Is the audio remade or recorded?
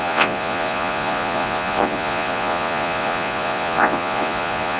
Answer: remade